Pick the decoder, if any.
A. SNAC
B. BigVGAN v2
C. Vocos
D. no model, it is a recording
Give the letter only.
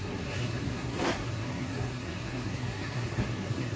A